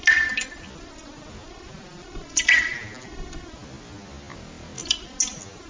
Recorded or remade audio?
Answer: recorded